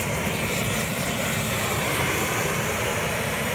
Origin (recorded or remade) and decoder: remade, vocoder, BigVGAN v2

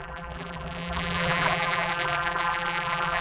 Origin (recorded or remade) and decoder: remade, vocoder, BigVGAN v2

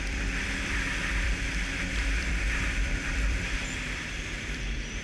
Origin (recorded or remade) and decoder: remade, vocoder, BigVGAN v2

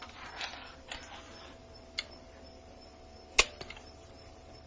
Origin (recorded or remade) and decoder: recorded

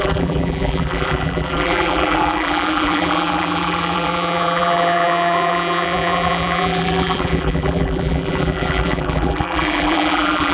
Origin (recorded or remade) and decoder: remade, vocoder, BigVGAN v2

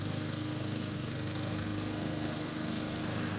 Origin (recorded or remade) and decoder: remade, codec, SNAC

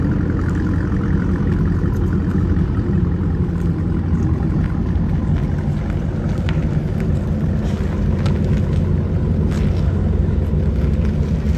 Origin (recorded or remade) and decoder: recorded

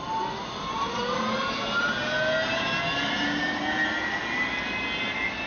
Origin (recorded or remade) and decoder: recorded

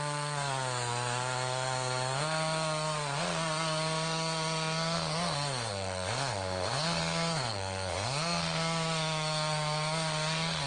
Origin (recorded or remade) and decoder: remade, codec, SNAC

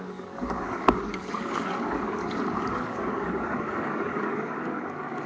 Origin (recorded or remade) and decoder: remade, codec, DAC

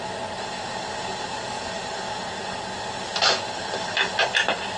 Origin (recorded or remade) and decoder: recorded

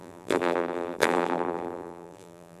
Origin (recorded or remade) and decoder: remade, vocoder, BigVGAN v2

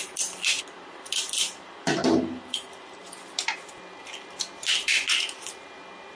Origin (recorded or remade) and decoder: recorded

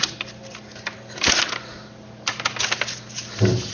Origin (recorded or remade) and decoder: recorded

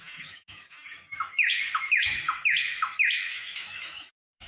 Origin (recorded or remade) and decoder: remade, autoencoder, DAC-VAE